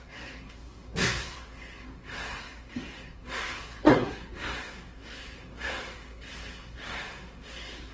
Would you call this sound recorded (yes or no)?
no